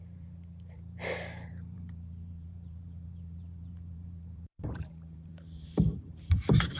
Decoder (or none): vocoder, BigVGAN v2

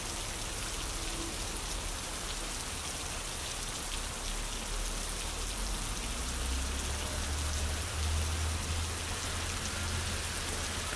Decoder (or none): none